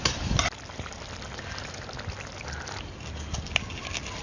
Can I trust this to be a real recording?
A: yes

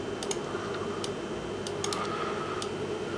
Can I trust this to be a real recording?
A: yes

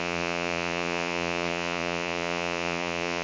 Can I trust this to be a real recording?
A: no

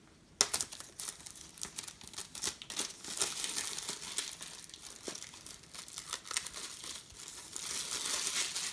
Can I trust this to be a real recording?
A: yes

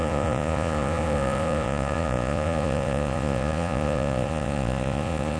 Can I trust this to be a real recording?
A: no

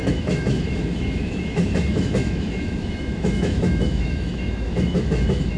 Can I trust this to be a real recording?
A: no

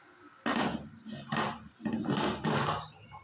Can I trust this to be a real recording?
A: yes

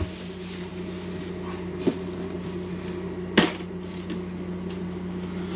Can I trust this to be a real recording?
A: yes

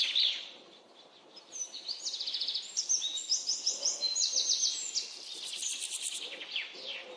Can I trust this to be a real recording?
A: yes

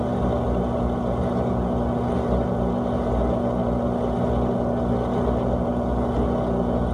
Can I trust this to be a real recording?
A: yes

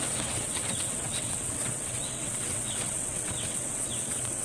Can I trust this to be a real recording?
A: no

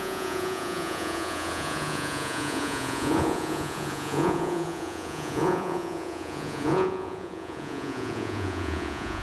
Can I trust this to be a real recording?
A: no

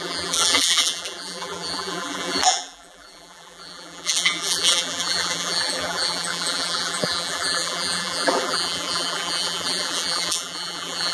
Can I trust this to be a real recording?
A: no